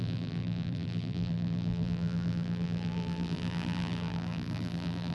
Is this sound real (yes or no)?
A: no